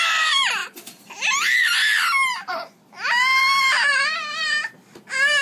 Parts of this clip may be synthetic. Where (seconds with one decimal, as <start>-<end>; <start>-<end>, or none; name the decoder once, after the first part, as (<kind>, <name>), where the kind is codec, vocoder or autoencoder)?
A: 0.6-1.7 (vocoder, BigVGAN v2); 2.3-4.6